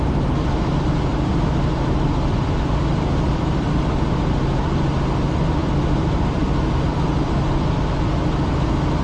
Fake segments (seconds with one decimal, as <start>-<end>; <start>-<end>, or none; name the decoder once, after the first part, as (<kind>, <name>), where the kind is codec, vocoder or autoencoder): 1.1-4.0 (vocoder, BigVGAN v2); 6.9-7.7